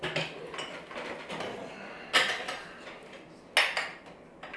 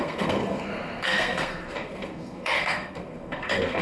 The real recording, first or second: first